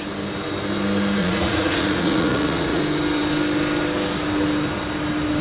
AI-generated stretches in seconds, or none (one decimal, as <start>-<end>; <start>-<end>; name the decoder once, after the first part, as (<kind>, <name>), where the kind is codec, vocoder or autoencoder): 1.2-2.8 (vocoder, Vocos)